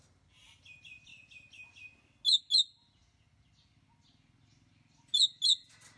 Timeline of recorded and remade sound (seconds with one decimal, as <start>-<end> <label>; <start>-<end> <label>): 0.0-6.0 recorded